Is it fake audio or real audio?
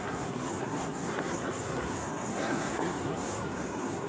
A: fake